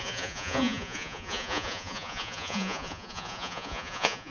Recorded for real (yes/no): no